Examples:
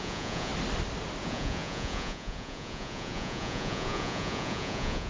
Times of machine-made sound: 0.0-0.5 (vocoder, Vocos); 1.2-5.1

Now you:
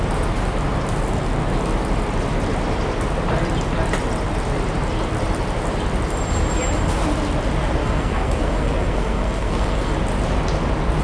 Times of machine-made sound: 7.8-9.9 (codec, SNAC)

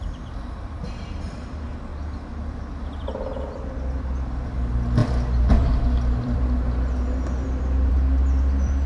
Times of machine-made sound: 0.0-1.9 (vocoder, BigVGAN v2); 3.4-8.9